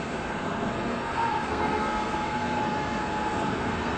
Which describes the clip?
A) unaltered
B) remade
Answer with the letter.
B